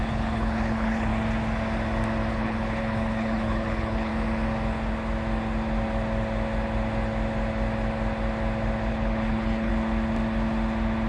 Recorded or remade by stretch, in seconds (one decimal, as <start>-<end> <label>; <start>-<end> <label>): 0.0-1.1 remade; 1.1-2.3 recorded; 2.3-4.1 remade; 4.1-8.9 recorded; 8.9-9.7 remade; 9.7-11.1 recorded